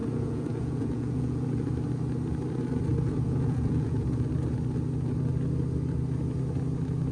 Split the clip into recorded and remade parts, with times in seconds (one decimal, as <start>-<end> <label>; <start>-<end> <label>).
0.0-1.7 remade; 1.7-2.9 recorded; 2.9-4.3 remade; 4.3-7.1 recorded